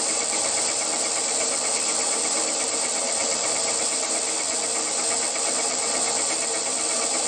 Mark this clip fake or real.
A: real